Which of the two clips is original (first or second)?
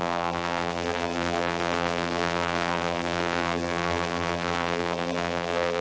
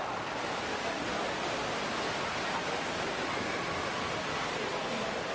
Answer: second